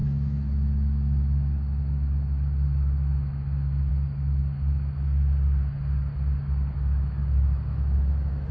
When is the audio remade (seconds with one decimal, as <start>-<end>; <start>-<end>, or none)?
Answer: 0.0-4.4; 6.7-8.5